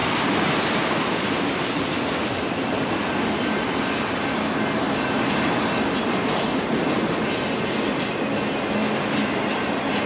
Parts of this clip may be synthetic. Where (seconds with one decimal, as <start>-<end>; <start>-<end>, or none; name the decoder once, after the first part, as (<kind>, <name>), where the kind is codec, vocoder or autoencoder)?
none